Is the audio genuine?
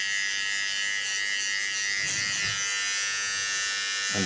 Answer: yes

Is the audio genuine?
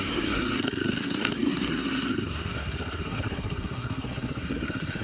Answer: no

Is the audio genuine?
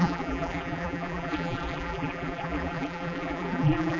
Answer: no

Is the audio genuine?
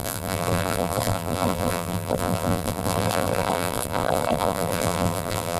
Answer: no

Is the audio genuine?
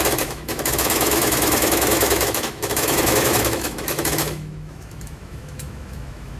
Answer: no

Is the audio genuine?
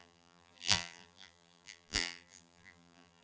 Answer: no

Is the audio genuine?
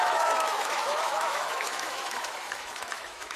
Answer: no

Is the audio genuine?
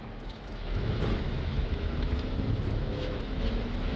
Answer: no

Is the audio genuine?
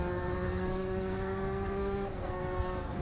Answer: no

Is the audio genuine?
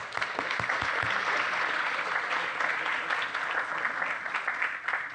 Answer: yes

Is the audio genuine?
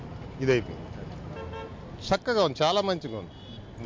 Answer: yes